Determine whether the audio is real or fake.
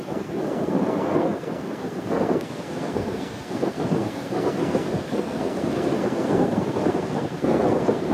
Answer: fake